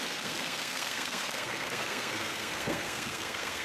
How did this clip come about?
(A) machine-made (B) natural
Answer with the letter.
A